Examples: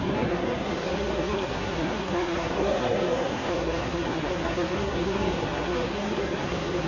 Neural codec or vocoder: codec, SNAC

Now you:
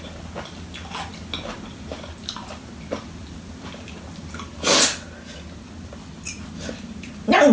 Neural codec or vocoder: none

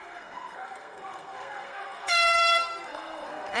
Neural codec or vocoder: codec, SNAC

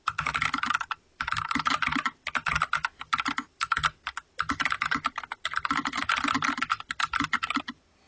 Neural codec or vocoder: none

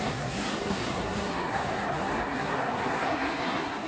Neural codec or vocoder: codec, SNAC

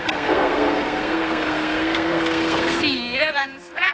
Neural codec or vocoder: codec, SNAC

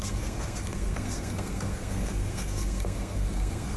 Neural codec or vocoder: codec, SNAC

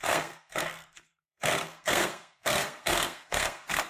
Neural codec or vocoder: codec, SNAC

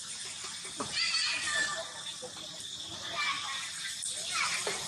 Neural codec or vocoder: none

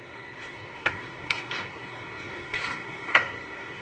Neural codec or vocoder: codec, SNAC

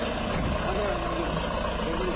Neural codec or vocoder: none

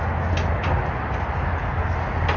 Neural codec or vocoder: none